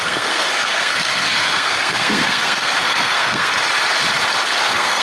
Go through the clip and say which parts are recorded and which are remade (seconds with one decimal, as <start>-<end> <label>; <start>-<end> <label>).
0.0-3.5 remade; 3.5-4.6 recorded; 4.6-5.0 remade